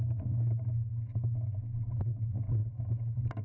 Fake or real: real